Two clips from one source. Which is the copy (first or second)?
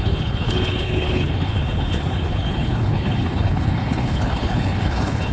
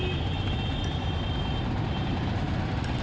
first